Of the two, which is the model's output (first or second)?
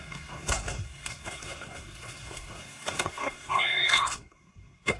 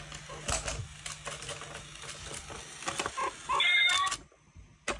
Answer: first